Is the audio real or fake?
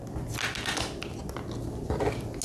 real